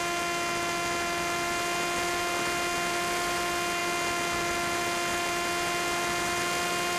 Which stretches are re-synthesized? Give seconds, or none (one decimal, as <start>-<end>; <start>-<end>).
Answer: none